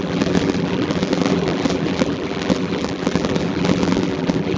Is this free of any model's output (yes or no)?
no